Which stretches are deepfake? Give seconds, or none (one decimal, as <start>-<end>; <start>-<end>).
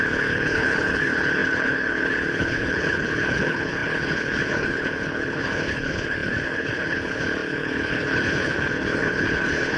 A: 0.0-9.8